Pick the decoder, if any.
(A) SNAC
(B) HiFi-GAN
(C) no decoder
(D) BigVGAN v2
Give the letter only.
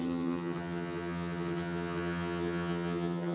B